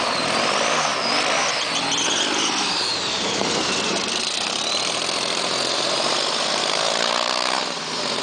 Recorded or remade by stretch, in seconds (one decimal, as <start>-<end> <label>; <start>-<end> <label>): 0.0-0.9 remade; 0.9-2.1 recorded; 2.1-8.2 remade